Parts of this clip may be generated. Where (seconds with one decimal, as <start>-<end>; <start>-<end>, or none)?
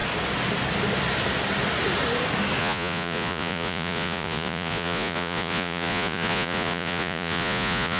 2.6-8.0